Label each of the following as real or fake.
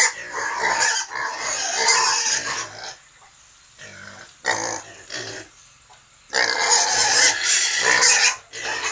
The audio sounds real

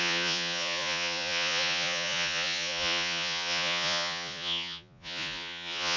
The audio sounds fake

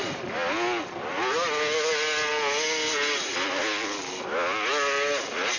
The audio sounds real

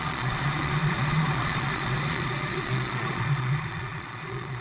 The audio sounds fake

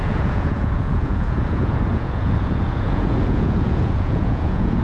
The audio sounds fake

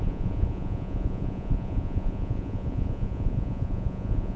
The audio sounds fake